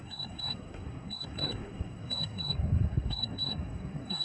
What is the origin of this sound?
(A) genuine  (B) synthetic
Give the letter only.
B